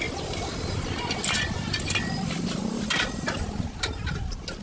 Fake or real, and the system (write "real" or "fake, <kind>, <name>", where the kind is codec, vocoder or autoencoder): real